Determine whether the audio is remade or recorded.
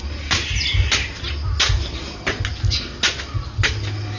recorded